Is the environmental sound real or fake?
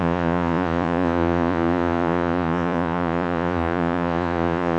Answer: fake